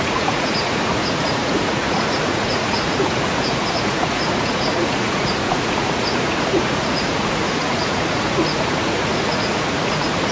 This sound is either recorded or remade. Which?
remade